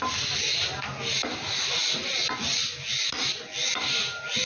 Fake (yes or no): no